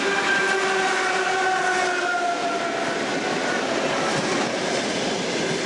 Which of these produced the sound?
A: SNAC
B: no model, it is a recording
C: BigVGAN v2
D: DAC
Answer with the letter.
B